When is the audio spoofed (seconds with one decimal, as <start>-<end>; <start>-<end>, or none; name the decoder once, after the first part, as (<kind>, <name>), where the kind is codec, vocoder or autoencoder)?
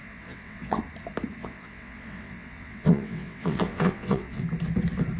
0.0-0.8 (vocoder, WaveNeXt); 1.4-4.4